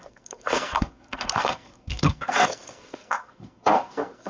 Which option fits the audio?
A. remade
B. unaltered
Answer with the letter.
A